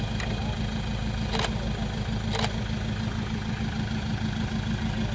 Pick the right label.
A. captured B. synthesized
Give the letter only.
A